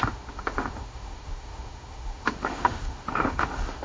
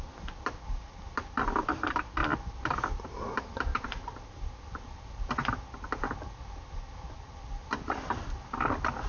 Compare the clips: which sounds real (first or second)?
second